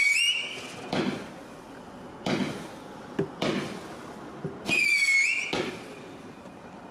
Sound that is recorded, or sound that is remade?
recorded